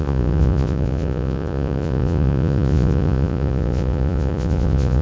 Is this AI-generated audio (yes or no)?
yes